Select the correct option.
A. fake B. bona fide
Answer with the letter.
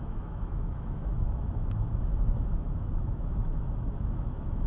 A